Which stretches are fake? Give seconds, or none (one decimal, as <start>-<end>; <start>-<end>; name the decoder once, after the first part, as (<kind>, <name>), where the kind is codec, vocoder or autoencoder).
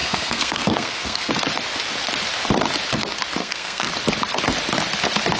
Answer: 0.0-1.3 (codec, SNAC); 3.4-3.9